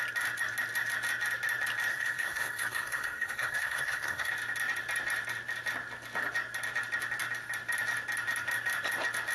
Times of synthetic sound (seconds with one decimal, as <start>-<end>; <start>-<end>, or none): 1.9-4.3